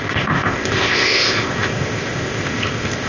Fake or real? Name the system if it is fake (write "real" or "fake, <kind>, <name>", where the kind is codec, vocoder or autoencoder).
fake, codec, ZipCodec